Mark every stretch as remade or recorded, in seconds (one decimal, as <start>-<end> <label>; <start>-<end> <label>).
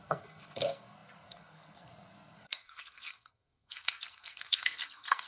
0.0-5.3 remade